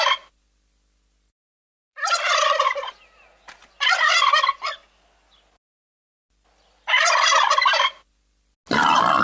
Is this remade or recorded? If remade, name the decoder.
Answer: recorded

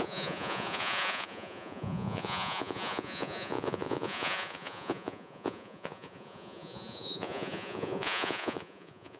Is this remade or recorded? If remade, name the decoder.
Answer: remade, vocoder, Vocos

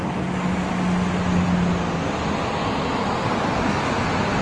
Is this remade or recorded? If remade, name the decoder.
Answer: recorded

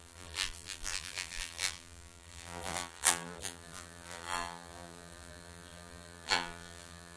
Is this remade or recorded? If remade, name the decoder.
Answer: remade, vocoder, BigVGAN v2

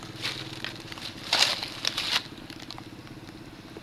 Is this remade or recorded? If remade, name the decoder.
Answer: recorded